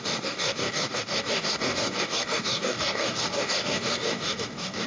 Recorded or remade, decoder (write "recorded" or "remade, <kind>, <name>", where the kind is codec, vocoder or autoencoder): remade, codec, DAC